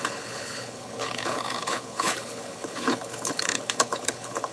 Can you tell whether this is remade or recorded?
remade